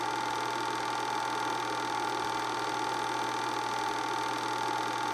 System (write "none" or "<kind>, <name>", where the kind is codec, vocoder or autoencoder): none